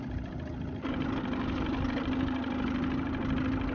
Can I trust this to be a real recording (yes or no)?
yes